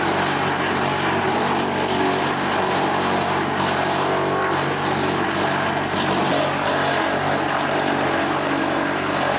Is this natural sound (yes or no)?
yes